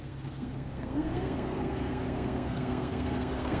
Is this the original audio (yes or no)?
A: no